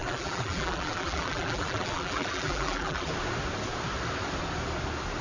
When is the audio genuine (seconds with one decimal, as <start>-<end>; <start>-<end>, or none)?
3.1-5.2

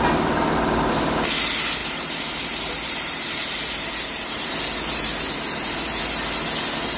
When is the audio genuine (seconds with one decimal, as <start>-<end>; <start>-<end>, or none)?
0.0-1.8; 6.0-7.0

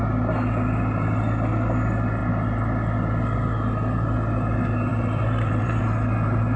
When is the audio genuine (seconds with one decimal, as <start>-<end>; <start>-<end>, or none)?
0.0-4.9; 5.8-6.6